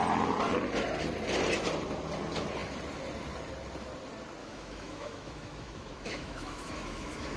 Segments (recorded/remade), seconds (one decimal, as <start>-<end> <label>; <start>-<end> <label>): 0.0-4.4 recorded; 4.4-7.4 remade